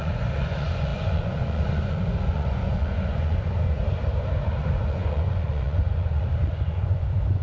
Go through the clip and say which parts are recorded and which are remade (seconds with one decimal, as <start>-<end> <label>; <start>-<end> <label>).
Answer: 0.0-3.8 remade; 3.8-4.6 recorded; 4.6-7.4 remade